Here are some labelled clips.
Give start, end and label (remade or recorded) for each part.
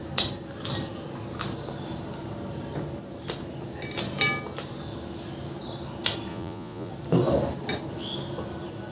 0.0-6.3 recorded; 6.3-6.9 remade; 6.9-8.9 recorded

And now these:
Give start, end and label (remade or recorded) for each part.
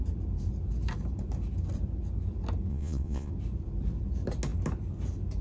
0.0-2.7 recorded; 2.7-3.3 remade; 3.3-5.4 recorded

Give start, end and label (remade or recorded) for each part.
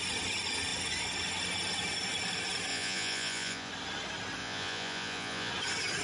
0.0-2.7 recorded; 2.7-3.7 remade; 3.7-4.4 recorded; 4.4-5.5 remade; 5.5-6.0 recorded